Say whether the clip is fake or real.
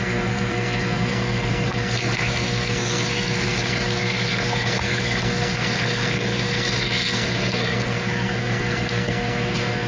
fake